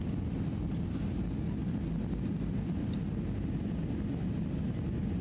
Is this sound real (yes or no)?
yes